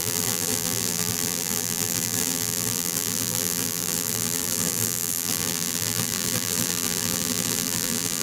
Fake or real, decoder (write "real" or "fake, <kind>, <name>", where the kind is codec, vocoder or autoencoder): fake, vocoder, BigVGAN v2